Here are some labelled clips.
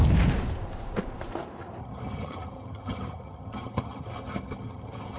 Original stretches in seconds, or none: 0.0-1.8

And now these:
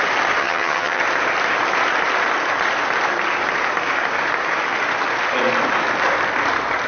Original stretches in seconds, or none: 0.0-0.4; 1.0-6.9

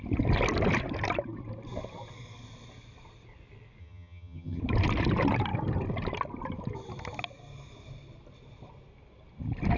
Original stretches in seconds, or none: 0.0-3.8; 4.6-9.8